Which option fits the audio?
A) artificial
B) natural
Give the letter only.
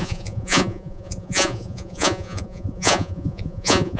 A